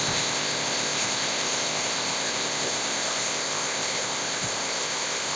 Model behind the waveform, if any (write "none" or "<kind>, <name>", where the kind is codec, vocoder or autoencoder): codec, ZipCodec